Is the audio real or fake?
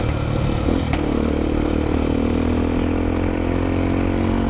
real